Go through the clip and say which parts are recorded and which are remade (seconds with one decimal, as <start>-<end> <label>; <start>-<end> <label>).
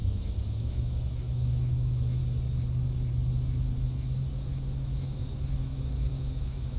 0.0-2.2 remade; 2.2-3.1 recorded; 3.1-6.8 remade